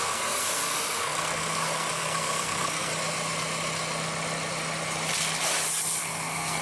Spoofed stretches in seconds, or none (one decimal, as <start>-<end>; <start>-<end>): 0.0-2.9; 6.0-6.6